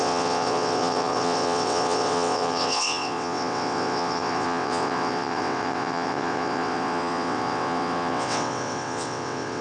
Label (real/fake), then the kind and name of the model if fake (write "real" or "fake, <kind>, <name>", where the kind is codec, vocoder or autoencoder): fake, vocoder, WaveNeXt